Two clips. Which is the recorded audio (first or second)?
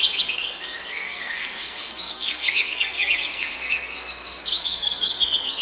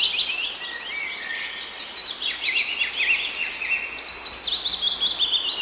second